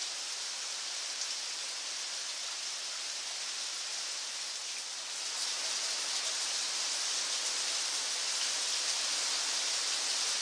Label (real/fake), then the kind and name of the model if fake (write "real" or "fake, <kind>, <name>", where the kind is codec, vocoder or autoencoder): real